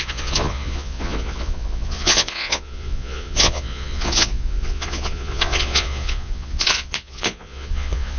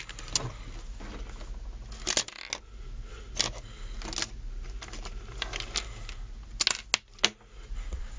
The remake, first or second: first